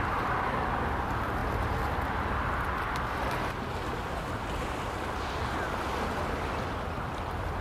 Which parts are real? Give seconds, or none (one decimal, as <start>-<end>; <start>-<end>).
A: 0.0-7.6